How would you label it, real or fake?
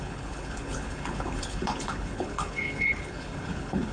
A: fake